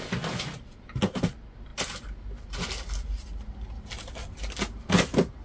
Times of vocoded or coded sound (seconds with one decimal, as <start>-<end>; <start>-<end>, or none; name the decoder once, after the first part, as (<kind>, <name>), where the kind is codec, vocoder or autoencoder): none